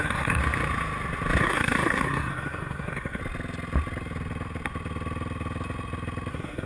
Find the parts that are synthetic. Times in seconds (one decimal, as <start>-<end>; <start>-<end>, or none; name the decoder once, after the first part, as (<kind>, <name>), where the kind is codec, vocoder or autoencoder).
0.0-0.4 (codec, SNAC); 1.4-3.2; 6.3-6.7